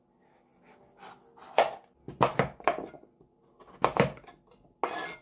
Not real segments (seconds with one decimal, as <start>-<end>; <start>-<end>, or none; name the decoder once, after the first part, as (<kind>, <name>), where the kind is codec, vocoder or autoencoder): none